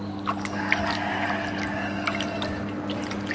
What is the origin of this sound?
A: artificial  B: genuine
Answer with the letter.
B